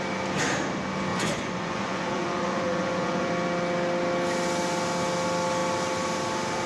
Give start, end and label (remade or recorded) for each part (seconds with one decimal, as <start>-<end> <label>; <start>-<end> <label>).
0.0-1.1 recorded; 1.1-3.3 remade; 3.3-6.7 recorded